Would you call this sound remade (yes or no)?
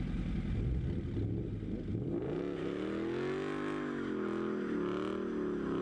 no